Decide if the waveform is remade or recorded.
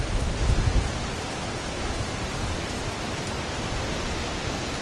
remade